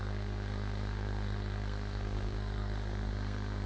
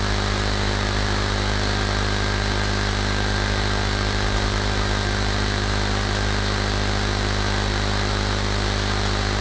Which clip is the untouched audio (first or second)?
second